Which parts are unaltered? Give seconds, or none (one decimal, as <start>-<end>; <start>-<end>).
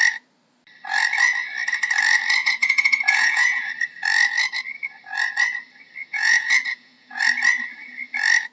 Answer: 0.0-2.4; 3.7-6.0; 7.2-8.5